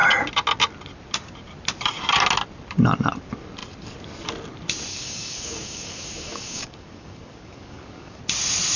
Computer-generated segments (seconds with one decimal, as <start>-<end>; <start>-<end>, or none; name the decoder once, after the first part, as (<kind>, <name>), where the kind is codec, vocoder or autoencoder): 4.9-8.2 (codec, DAC)

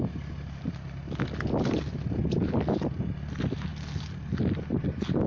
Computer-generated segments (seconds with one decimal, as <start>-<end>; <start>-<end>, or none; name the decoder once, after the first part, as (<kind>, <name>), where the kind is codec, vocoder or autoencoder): none

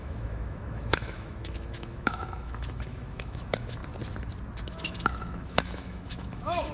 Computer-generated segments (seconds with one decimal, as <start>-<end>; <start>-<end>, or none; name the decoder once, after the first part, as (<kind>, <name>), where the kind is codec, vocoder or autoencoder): 0.0-3.8 (autoencoder, DAC-VAE); 4.6-6.7

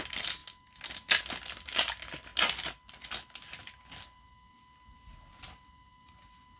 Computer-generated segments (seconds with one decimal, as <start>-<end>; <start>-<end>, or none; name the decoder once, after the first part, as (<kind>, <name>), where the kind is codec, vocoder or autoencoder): none